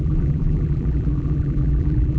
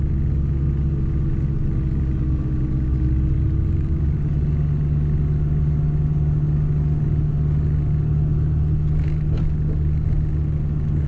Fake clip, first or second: first